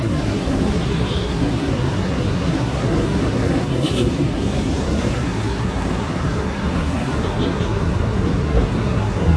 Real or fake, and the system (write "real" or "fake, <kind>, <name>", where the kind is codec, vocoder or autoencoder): fake, codec, SNAC